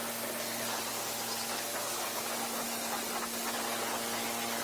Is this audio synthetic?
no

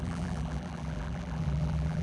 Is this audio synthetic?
yes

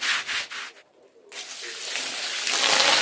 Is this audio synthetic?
no